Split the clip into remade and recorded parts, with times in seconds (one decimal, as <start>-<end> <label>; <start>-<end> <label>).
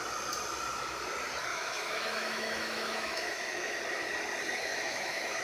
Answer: 0.0-1.5 recorded; 1.5-3.8 remade; 3.8-4.7 recorded; 4.7-5.4 remade